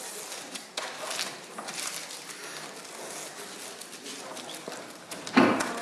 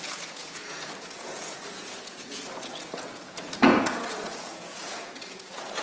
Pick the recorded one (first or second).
first